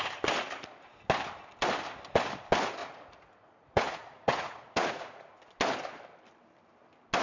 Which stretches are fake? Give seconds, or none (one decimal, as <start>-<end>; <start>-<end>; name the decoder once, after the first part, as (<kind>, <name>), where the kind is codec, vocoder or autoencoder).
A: 2.8-5.3 (vocoder, Vocos)